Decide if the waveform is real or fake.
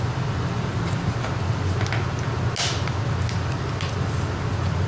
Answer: real